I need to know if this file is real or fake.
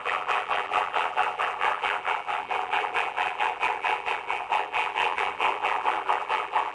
fake